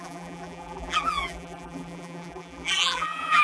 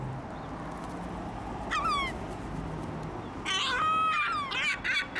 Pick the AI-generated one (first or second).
first